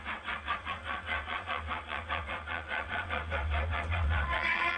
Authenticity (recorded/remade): remade